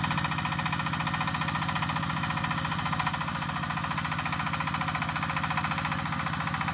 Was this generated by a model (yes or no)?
no